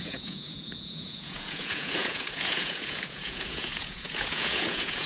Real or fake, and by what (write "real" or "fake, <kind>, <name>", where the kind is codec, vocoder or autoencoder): fake, vocoder, Vocos